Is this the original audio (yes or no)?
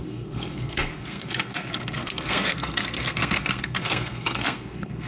no